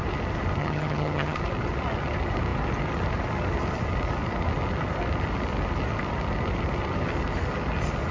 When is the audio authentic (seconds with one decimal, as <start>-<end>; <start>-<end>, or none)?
0.0-0.6; 1.4-8.1